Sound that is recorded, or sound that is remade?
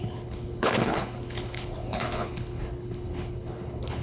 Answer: remade